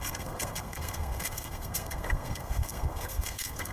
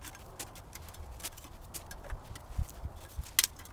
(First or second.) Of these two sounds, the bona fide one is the second